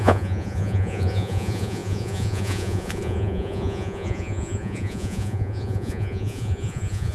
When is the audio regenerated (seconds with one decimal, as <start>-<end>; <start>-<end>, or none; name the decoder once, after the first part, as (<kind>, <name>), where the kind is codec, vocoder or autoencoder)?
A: 0.0-7.1 (vocoder, Vocos)